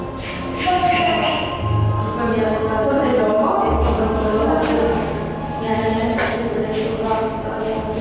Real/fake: real